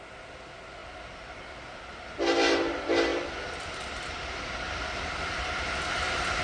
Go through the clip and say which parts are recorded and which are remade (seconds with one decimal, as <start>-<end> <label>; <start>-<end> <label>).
0.0-0.8 recorded; 0.8-1.4 remade; 1.4-3.1 recorded; 3.1-6.4 remade